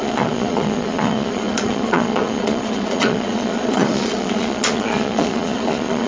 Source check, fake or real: fake